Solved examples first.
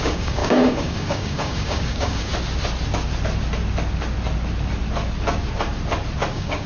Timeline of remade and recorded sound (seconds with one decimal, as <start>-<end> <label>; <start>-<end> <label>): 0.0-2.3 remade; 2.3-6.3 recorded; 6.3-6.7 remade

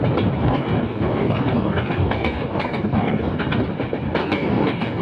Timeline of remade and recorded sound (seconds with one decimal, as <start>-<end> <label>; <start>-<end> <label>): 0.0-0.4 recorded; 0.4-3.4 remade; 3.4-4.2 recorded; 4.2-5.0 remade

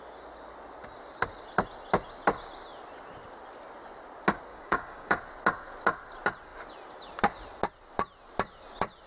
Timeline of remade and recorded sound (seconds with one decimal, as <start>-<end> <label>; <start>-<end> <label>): 0.0-4.5 recorded; 4.5-5.2 remade; 5.2-9.1 recorded

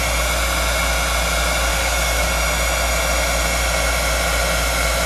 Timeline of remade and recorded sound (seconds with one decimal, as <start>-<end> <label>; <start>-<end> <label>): 0.0-1.7 recorded; 1.7-2.3 remade; 2.3-5.1 recorded

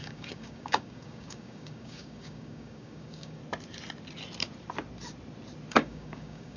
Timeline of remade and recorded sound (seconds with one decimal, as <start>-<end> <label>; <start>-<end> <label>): 0.0-3.4 remade; 3.4-5.7 recorded; 5.7-6.6 remade

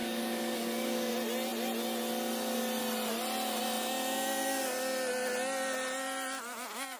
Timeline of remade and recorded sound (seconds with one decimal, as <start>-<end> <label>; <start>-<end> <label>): 0.0-1.1 remade; 1.1-7.0 recorded